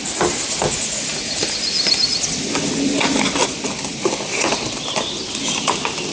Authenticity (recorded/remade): recorded